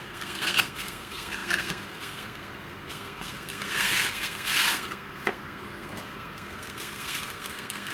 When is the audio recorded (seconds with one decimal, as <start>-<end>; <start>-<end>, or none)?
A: none